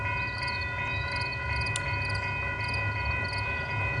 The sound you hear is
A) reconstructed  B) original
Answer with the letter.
B